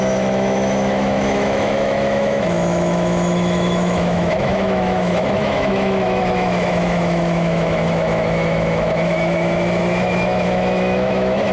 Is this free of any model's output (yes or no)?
no